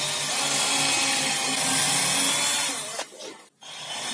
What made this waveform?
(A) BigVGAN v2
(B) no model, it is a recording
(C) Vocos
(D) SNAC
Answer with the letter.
B